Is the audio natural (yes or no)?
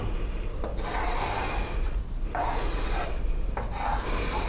yes